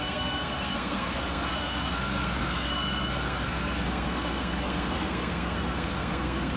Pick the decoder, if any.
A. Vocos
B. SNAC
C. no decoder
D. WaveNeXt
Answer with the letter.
B